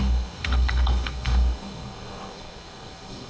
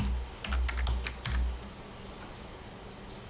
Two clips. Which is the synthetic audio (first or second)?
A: first